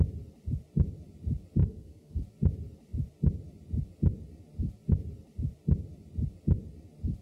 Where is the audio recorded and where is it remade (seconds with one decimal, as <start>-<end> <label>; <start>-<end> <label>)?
0.0-1.6 recorded; 1.6-2.2 remade; 2.2-7.2 recorded